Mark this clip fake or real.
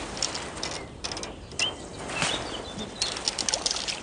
real